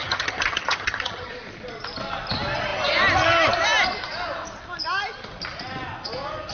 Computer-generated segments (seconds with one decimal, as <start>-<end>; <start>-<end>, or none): 0.0-1.3